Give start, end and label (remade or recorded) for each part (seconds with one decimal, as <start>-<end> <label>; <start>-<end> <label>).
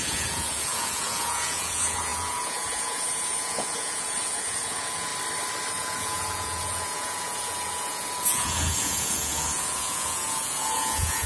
0.0-5.1 remade; 5.1-5.7 recorded; 5.7-11.3 remade